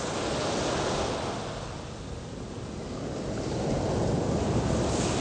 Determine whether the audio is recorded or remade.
recorded